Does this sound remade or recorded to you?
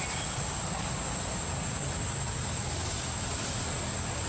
recorded